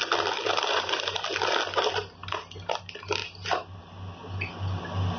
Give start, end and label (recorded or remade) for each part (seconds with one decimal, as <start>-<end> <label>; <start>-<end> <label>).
0.0-0.4 recorded; 0.4-1.2 remade; 1.2-5.2 recorded